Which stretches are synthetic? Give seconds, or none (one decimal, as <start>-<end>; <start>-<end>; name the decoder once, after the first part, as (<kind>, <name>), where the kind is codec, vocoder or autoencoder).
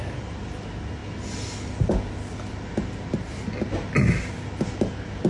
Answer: none